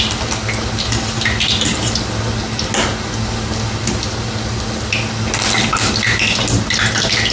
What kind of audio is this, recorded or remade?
recorded